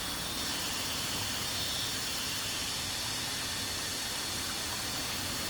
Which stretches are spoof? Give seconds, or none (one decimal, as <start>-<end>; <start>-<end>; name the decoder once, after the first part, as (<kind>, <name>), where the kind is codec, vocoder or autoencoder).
none